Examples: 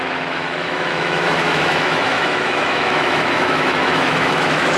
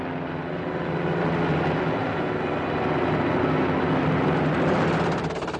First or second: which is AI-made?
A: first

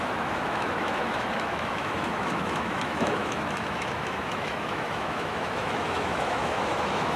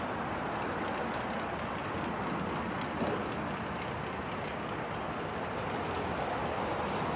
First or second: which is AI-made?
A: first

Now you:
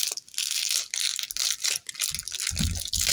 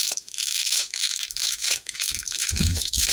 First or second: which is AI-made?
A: second